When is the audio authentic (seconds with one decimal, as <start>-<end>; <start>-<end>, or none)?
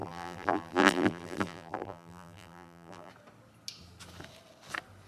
3.1-5.1